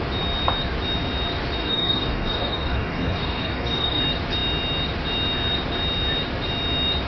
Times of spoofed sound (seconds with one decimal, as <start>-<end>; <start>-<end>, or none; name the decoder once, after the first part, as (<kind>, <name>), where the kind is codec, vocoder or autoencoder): 1.6-4.0 (codec, DAC)